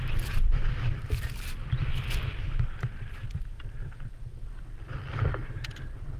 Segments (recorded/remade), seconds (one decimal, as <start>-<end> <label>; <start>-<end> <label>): 0.0-6.2 remade